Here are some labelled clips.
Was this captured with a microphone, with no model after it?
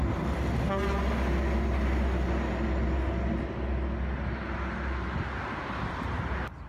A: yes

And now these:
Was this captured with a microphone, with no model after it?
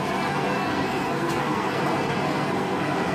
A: no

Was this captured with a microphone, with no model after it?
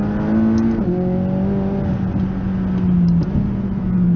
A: yes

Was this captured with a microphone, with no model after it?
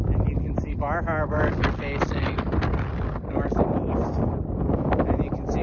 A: yes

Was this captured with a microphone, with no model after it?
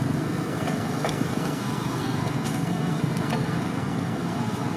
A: no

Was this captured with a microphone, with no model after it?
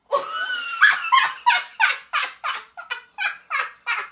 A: yes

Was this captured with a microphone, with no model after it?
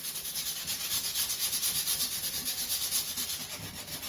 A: yes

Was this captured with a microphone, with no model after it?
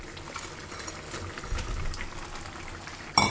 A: yes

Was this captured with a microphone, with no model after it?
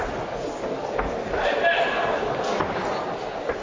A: yes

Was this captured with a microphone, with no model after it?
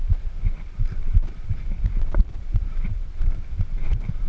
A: no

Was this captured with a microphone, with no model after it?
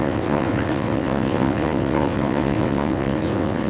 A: no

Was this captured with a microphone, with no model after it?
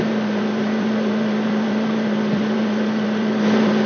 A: no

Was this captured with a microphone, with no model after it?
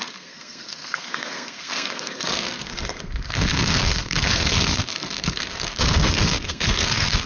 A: no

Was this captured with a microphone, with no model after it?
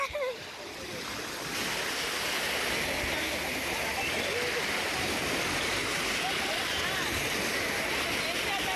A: yes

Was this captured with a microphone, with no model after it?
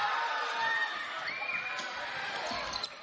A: yes